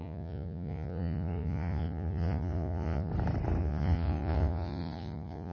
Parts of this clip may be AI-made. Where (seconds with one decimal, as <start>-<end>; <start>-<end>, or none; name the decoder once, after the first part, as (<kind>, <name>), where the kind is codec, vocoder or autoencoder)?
0.0-3.1 (vocoder, Vocos); 3.6-5.5